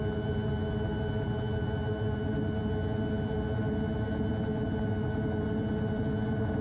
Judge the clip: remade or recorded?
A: recorded